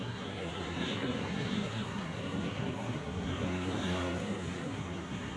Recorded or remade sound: remade